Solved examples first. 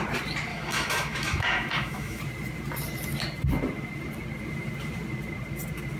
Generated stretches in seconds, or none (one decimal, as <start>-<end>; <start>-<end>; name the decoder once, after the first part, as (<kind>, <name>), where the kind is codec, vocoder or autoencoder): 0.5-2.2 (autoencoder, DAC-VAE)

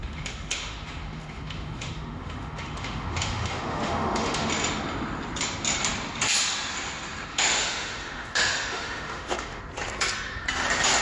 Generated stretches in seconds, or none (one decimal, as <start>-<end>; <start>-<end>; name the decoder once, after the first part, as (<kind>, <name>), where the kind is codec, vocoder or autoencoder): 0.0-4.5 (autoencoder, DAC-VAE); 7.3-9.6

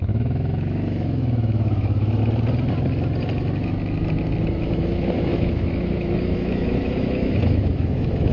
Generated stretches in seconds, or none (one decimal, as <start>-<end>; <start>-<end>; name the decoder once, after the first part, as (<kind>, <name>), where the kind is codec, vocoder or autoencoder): 0.0-2.2 (autoencoder, DAC-VAE); 4.7-8.3

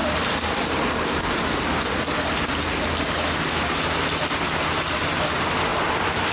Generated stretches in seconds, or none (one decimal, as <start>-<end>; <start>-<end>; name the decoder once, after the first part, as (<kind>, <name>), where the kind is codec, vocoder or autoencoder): none

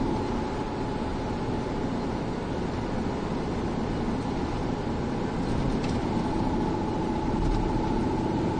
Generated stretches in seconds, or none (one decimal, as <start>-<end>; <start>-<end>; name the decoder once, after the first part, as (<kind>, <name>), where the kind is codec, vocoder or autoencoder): none

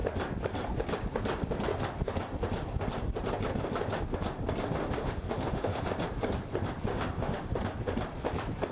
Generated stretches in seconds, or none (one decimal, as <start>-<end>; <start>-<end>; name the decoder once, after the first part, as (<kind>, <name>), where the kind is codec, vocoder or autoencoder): 4.8-5.8 (autoencoder, DAC-VAE); 6.9-7.6

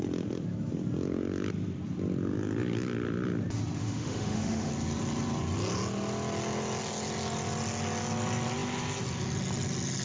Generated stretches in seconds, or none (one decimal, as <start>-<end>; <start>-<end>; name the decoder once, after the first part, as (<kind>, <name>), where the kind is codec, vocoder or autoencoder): 3.8-4.7 (autoencoder, DAC-VAE)

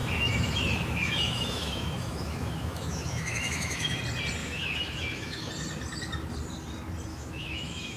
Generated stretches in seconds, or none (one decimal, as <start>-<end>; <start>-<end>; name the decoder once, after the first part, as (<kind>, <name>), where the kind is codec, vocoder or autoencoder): 0.0-4.0 (autoencoder, DAC-VAE); 4.4-5.5; 7.1-8.0